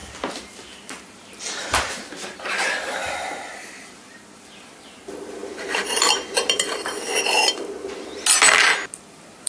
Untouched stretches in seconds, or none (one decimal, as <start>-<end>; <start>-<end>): 0.0-1.4; 8.1-9.1